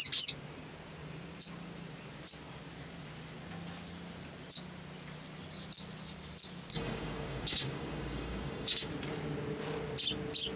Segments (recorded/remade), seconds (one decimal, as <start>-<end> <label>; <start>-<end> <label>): 0.0-6.7 recorded; 6.7-8.9 remade; 8.9-10.6 recorded